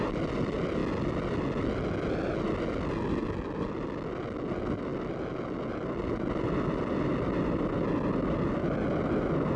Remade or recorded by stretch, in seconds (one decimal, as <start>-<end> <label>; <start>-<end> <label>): 0.0-9.6 recorded